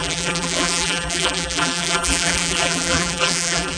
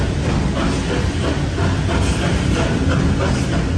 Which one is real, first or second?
second